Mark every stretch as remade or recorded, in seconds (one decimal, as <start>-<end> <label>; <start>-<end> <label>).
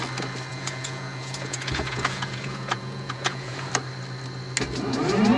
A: 0.0-0.5 recorded; 0.5-3.7 remade; 3.7-5.4 recorded